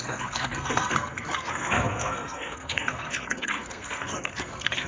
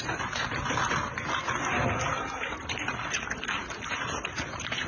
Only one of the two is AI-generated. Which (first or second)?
first